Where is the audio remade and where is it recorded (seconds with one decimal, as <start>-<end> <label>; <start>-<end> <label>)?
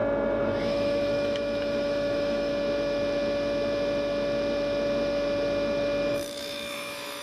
0.0-0.6 recorded; 0.6-2.5 remade; 2.5-6.1 recorded; 6.1-7.2 remade